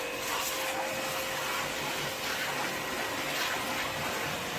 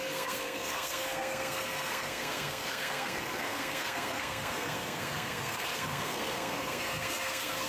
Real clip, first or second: first